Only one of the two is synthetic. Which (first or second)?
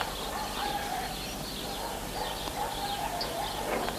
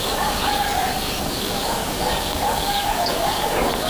second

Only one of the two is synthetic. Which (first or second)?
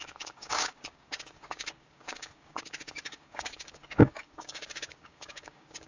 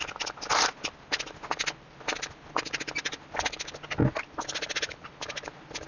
first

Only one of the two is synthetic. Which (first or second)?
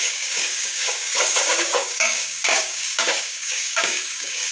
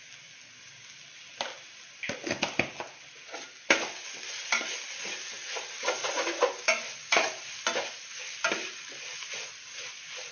first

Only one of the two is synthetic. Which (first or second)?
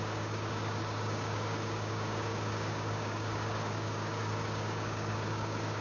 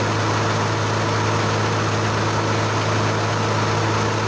first